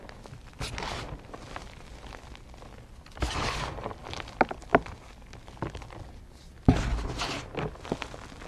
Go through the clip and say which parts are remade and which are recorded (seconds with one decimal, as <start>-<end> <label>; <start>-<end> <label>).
0.0-8.5 recorded